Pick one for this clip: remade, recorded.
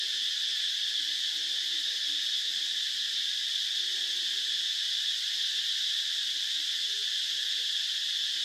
recorded